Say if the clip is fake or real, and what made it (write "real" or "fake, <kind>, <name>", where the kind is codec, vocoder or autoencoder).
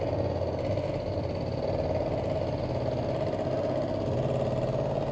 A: real